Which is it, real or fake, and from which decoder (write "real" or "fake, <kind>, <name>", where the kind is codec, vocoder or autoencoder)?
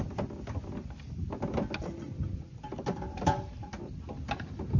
real